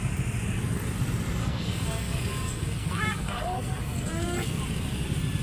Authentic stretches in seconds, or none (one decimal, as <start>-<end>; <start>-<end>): 0.0-1.4; 4.6-5.4